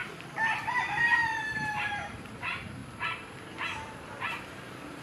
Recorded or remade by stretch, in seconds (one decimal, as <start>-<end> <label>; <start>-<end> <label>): 0.0-2.8 remade; 2.8-4.4 recorded; 4.4-5.0 remade